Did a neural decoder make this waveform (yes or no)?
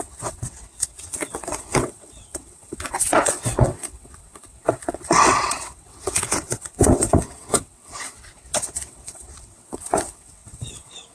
yes